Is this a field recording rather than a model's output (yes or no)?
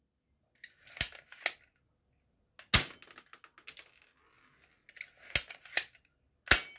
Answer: yes